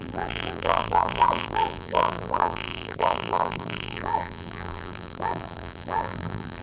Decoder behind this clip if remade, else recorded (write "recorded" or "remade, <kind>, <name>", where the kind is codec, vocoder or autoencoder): remade, vocoder, BigVGAN v2